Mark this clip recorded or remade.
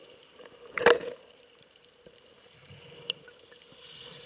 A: remade